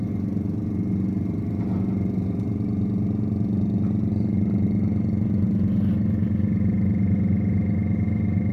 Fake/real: real